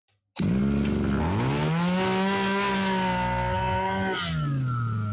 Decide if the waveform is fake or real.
real